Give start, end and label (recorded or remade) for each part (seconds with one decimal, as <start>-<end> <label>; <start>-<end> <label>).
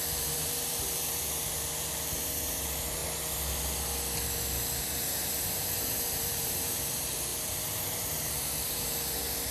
0.0-3.0 remade; 3.0-4.8 recorded; 4.8-9.5 remade